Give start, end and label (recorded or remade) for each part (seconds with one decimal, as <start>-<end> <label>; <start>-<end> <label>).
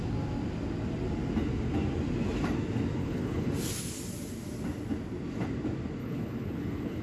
0.0-3.0 recorded; 3.0-3.5 remade; 3.5-6.0 recorded; 6.0-7.0 remade